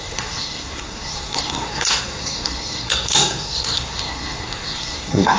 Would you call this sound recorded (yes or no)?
no